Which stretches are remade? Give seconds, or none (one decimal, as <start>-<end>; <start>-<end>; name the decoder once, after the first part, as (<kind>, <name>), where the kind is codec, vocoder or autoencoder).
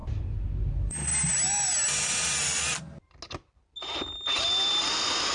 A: 0.7-1.1 (vocoder, BigVGAN v2); 4.3-5.3